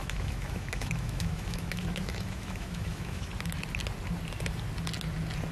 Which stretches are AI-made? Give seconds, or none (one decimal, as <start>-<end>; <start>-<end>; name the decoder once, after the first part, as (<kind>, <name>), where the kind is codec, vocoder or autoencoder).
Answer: 0.0-3.3 (autoencoder, DAC-VAE)

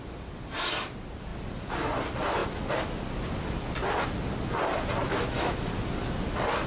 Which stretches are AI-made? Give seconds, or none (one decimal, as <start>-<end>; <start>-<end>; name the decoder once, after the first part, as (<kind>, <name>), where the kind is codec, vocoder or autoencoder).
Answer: 5.1-5.7 (autoencoder, DAC-VAE)

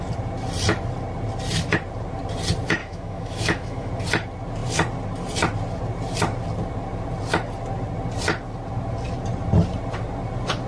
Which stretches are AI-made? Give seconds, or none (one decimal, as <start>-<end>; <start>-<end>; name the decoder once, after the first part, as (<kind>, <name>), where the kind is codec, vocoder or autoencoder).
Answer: 2.8-3.9 (autoencoder, DAC-VAE)

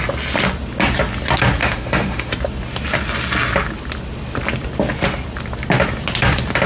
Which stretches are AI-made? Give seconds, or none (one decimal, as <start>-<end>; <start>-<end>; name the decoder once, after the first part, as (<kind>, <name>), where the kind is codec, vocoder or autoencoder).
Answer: 1.6-2.3 (autoencoder, DAC-VAE)

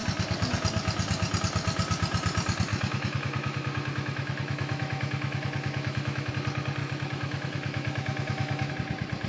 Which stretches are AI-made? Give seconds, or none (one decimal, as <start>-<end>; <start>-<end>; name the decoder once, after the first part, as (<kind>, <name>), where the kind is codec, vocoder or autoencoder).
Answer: 2.7-6.3 (autoencoder, DAC-VAE); 6.8-8.7

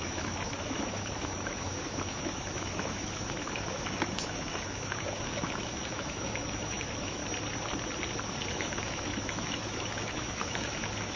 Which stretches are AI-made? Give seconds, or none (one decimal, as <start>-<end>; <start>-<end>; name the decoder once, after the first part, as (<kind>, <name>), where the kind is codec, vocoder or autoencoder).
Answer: 0.0-7.2 (autoencoder, DAC-VAE); 8.5-11.2

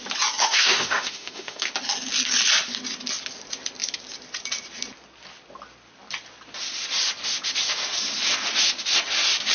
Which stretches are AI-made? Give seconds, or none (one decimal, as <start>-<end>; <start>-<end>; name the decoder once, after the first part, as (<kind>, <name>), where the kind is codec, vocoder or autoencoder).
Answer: 0.4-1.7 (autoencoder, DAC-VAE)

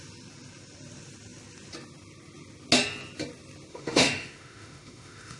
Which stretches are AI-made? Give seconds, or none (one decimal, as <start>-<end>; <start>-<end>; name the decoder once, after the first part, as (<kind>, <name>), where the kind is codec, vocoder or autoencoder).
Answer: 3.7-5.4 (autoencoder, DAC-VAE)